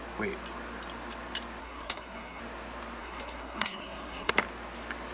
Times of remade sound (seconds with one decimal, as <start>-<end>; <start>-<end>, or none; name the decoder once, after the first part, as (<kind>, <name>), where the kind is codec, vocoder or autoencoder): 1.6-2.4 (codec, SNAC); 3.0-4.3